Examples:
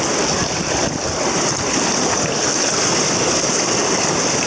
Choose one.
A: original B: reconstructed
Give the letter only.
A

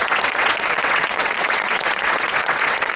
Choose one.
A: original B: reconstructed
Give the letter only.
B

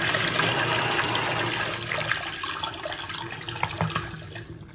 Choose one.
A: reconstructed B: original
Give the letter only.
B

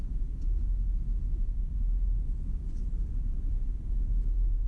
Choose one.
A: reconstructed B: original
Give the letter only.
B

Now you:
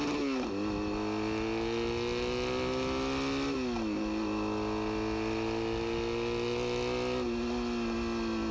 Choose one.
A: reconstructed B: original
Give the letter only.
B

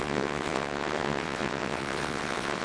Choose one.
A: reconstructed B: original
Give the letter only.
A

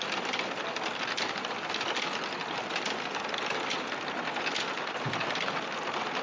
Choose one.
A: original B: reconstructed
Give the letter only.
A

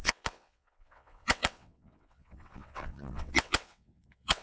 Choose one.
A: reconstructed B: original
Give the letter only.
A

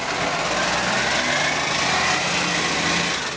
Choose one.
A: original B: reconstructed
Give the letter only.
A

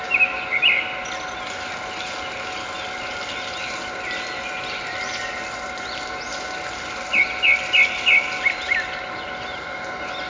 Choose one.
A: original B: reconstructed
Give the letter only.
A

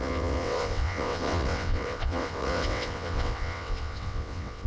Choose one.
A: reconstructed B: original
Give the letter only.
A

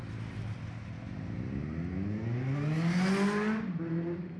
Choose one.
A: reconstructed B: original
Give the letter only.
B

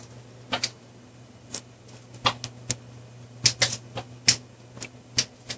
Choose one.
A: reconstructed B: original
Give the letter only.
B